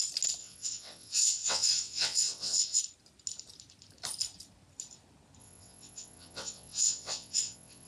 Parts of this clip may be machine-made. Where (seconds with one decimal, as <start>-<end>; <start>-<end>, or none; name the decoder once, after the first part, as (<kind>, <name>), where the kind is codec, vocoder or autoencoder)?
0.4-2.8 (vocoder, WaveNeXt); 5.4-7.9